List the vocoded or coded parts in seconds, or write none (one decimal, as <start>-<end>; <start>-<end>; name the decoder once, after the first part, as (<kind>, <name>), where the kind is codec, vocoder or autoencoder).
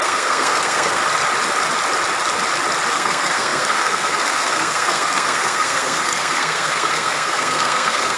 0.0-1.0 (codec, SNAC); 2.9-8.2